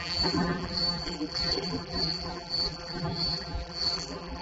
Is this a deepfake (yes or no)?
yes